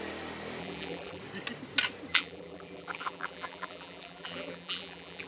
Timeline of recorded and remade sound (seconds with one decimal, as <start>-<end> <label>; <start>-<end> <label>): 0.0-0.6 recorded; 0.6-1.2 remade; 1.2-2.1 recorded; 2.1-5.3 remade